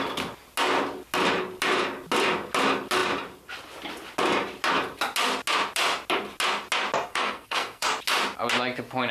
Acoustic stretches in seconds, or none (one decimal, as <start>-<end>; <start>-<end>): 0.0-7.1; 7.9-9.1